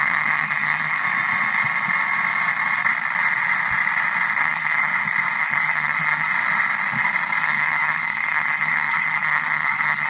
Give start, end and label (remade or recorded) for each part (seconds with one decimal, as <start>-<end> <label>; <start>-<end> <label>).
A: 0.0-1.0 remade; 1.0-4.4 recorded; 4.4-4.9 remade; 4.9-5.4 recorded; 5.4-6.3 remade; 6.3-7.4 recorded; 7.4-10.1 remade